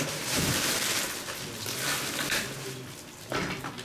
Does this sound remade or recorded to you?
recorded